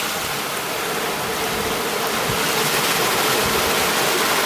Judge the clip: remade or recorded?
recorded